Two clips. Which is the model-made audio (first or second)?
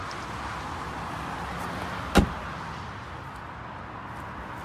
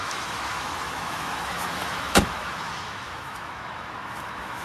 second